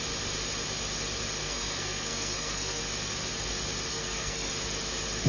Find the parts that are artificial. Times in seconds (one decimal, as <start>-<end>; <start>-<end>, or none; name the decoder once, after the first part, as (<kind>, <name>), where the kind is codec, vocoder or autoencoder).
1.4-2.8 (codec, SNAC); 3.9-4.5